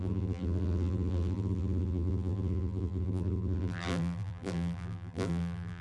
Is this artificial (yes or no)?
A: yes